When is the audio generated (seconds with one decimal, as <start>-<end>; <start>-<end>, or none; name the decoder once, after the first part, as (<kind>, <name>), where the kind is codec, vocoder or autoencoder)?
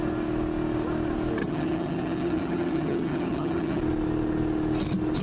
1.4-3.8 (vocoder, HiFi-GAN)